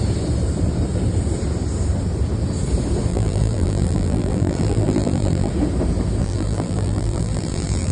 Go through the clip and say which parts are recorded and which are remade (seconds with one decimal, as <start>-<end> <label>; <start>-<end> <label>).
0.0-3.1 recorded; 3.1-5.5 remade; 5.5-6.2 recorded; 6.2-7.9 remade